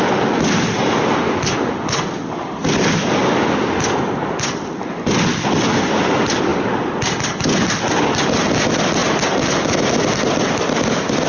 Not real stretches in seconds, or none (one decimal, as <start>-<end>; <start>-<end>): none